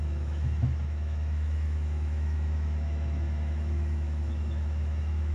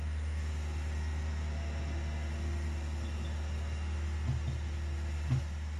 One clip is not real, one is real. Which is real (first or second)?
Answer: second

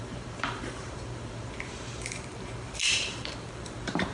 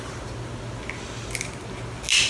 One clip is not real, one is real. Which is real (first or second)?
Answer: second